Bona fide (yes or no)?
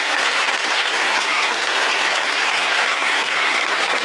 no